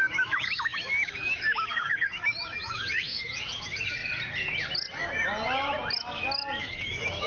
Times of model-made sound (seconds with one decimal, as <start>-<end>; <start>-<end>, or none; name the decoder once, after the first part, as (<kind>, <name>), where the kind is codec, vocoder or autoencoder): 0.0-4.0 (autoencoder, DAC-VAE); 6.6-7.3